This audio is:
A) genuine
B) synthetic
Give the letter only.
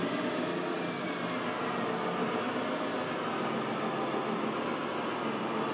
A